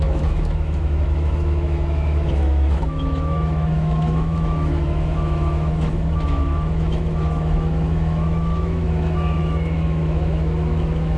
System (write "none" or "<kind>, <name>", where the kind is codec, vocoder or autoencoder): autoencoder, DAC-VAE